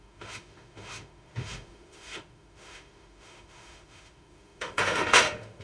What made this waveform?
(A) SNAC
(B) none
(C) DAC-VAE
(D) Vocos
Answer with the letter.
C